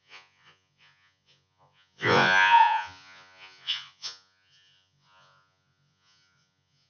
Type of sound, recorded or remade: remade